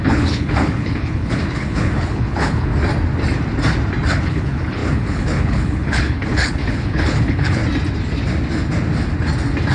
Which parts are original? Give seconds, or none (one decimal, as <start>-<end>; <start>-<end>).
2.7-4.1; 7.6-9.7